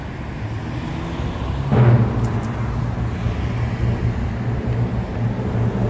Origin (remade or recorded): recorded